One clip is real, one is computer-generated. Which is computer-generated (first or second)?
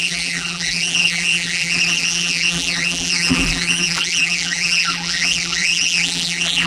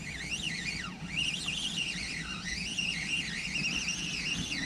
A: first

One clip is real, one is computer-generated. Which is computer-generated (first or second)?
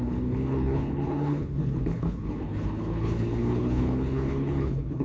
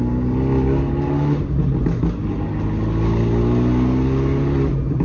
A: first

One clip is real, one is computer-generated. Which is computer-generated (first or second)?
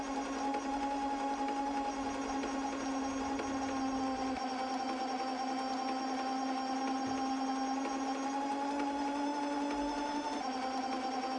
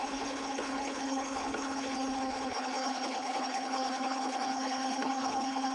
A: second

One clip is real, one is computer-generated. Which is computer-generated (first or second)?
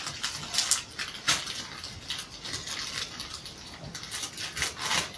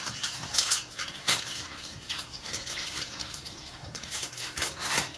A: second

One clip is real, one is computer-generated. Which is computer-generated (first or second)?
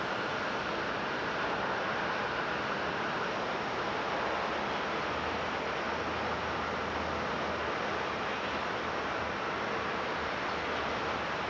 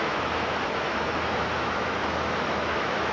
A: second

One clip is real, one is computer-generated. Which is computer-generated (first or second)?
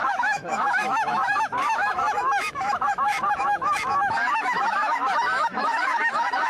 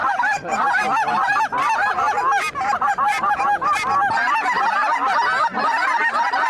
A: first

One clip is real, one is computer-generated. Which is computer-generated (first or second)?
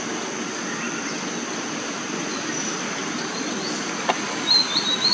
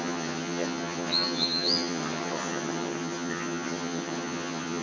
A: second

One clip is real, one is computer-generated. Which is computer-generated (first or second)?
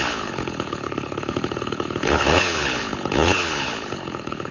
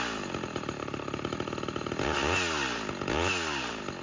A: first